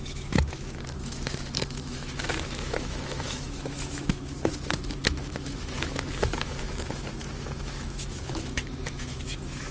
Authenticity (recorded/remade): remade